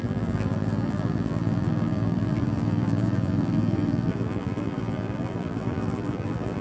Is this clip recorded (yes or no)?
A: no